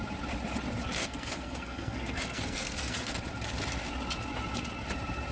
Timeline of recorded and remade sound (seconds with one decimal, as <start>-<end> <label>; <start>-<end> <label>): 0.0-1.0 recorded; 1.0-3.2 remade; 3.2-5.3 recorded